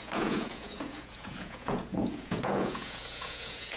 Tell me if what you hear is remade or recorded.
remade